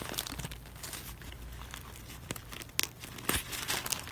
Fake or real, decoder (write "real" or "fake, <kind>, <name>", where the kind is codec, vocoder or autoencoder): real